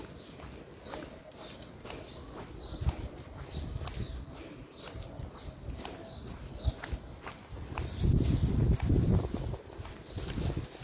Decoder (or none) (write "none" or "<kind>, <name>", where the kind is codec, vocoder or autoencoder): none